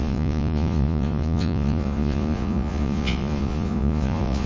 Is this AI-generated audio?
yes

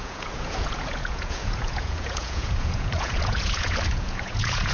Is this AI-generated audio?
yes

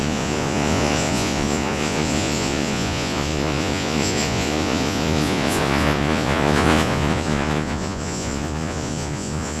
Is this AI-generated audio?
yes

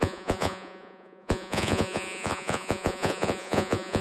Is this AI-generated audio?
yes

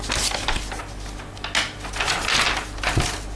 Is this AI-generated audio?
no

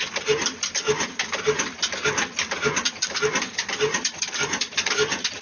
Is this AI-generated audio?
no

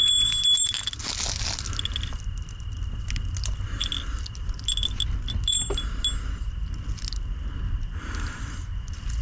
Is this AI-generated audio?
no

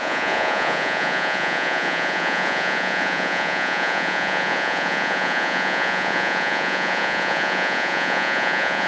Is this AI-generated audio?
yes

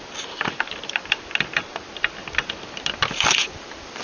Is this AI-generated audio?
no